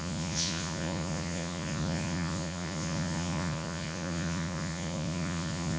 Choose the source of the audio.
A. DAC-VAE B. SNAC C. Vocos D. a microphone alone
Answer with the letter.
C